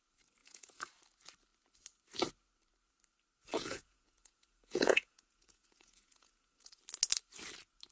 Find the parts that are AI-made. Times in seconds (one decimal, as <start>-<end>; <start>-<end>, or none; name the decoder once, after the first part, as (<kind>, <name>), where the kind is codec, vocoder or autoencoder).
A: 0.4-0.9 (vocoder, Vocos); 3.5-6.8